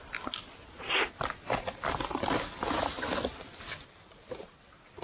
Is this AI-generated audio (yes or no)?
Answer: no